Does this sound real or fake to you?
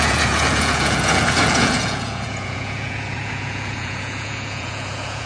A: fake